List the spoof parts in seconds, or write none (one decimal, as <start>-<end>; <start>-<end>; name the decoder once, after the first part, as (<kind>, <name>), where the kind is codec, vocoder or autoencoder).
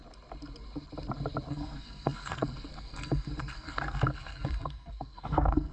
1.5-5.7 (codec, SNAC)